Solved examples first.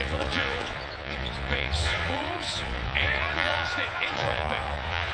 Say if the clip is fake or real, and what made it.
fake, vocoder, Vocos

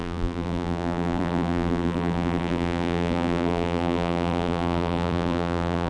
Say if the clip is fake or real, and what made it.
fake, vocoder, BigVGAN v2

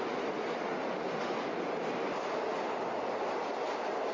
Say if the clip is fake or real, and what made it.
real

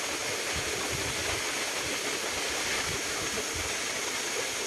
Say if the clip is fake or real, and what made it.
real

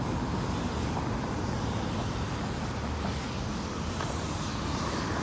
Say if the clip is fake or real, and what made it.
real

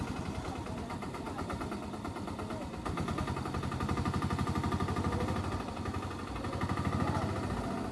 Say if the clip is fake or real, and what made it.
real